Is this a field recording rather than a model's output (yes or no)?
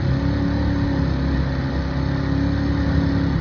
yes